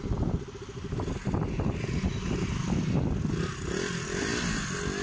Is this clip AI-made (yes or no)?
no